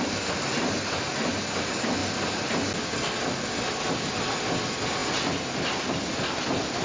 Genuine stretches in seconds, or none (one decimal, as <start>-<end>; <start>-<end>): 0.0-6.8